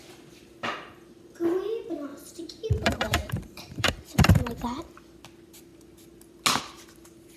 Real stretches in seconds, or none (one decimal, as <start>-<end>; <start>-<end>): 0.0-2.1; 4.8-7.4